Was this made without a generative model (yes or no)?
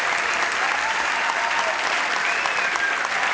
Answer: yes